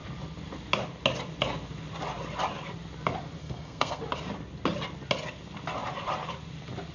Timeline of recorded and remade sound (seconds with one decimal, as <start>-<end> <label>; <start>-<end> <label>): 0.0-3.4 recorded; 3.4-4.0 remade; 4.0-6.9 recorded